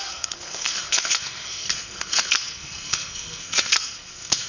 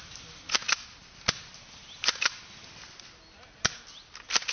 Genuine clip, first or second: second